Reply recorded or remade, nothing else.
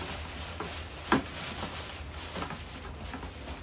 recorded